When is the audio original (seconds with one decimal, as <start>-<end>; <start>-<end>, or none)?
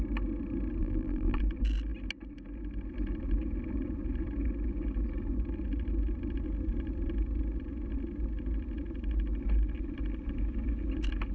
0.0-0.8; 1.4-11.3